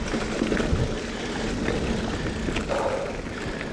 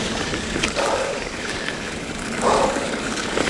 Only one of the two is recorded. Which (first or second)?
first